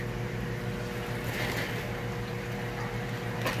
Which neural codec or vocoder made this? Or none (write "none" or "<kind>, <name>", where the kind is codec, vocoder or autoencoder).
none